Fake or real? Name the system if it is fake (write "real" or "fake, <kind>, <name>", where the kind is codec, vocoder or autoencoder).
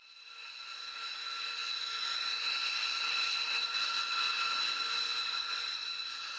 real